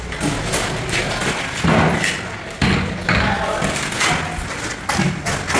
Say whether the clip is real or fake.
real